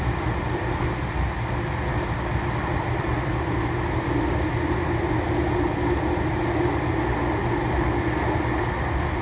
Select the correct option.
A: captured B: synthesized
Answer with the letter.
A